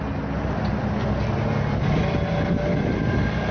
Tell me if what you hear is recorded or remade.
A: recorded